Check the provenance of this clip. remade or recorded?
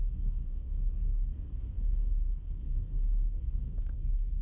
remade